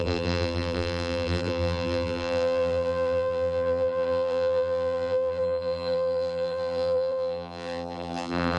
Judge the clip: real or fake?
fake